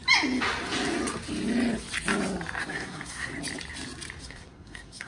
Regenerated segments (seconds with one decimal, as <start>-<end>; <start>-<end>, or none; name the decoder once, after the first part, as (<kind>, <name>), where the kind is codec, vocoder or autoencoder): 2.6-3.3 (codec, SNAC); 4.2-5.1